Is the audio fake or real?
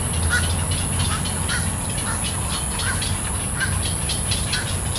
real